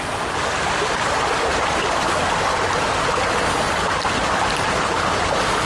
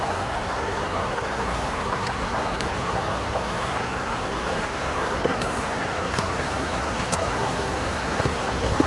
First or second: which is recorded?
first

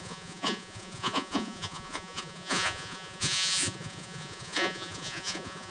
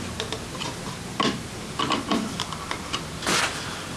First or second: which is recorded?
second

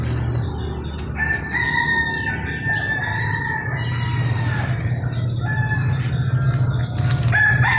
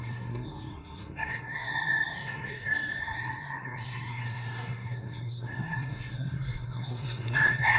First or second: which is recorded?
first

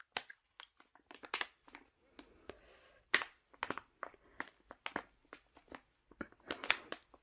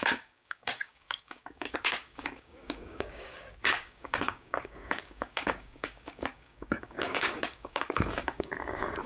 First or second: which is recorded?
first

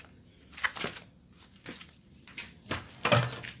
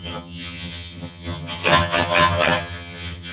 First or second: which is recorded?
first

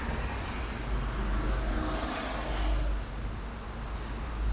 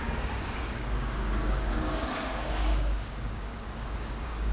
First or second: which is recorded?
first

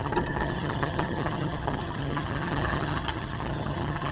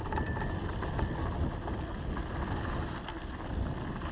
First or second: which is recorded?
second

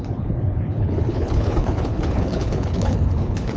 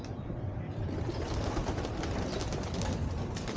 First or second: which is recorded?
second